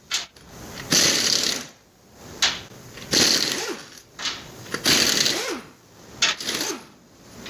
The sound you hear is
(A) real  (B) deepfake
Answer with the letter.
A